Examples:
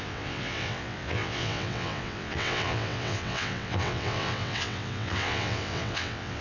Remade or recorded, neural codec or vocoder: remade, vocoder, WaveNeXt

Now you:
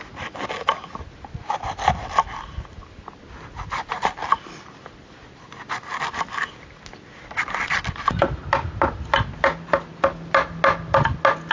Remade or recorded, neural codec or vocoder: recorded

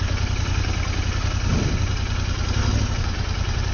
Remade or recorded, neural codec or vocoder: recorded